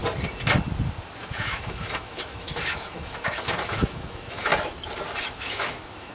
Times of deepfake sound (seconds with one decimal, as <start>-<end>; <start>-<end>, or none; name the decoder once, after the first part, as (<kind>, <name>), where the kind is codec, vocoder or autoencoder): 1.2-4.5 (autoencoder, DAC-VAE); 5.2-6.1